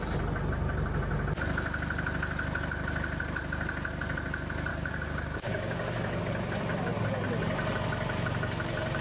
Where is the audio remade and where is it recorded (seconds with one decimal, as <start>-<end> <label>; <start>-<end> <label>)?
0.0-4.7 recorded; 4.7-6.2 remade; 6.2-9.0 recorded